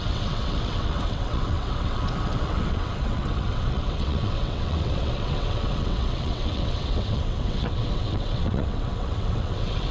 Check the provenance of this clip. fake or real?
fake